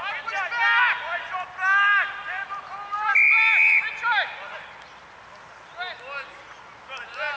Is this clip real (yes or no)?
yes